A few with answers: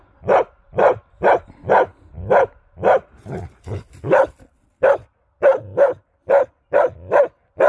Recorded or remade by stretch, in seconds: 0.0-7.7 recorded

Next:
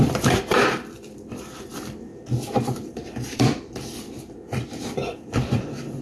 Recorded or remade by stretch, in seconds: 0.0-2.1 remade; 2.1-2.9 recorded; 2.9-6.0 remade